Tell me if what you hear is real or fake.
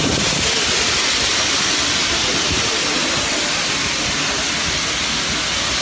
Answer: real